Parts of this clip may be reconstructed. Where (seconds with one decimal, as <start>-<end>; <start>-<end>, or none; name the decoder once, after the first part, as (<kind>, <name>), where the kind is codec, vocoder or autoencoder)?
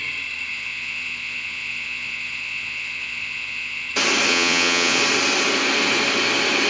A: 0.5-3.9 (vocoder, Vocos); 4.3-5.0